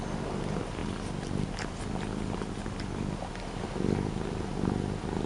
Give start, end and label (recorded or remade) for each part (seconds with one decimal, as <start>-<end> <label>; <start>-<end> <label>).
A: 0.0-5.3 recorded